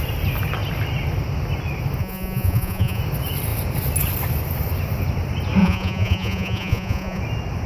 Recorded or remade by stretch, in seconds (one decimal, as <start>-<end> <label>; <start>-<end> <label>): 0.0-2.0 recorded; 2.0-3.0 remade; 3.0-5.6 recorded; 5.6-7.2 remade; 7.2-7.7 recorded